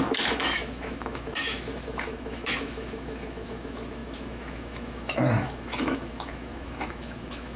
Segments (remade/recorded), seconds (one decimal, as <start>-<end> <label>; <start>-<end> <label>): 0.0-7.6 remade